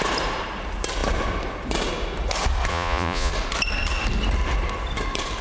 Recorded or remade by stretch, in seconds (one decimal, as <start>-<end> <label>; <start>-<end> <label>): 0.0-2.7 recorded; 2.7-3.3 remade; 3.3-5.4 recorded